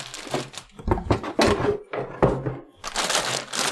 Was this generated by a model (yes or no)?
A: no